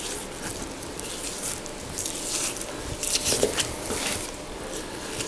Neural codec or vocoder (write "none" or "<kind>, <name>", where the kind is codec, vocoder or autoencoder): none